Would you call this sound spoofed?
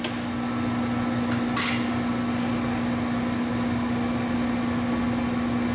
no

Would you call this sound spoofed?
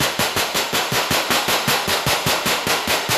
yes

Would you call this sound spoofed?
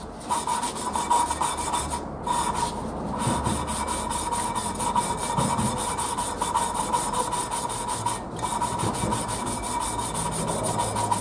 no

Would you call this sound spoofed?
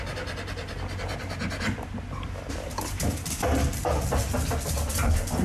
no